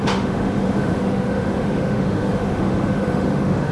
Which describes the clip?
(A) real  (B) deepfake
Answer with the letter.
B